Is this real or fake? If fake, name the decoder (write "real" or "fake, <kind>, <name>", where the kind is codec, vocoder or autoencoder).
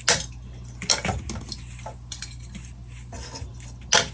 real